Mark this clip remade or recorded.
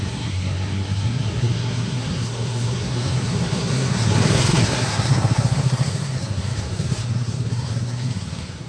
remade